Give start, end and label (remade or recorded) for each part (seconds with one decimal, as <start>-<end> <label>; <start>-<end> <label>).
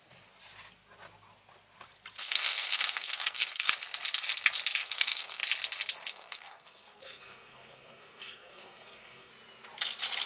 0.0-2.2 recorded; 2.2-3.7 remade; 3.7-4.8 recorded; 4.8-5.4 remade; 5.4-6.1 recorded; 6.1-9.3 remade; 9.3-10.3 recorded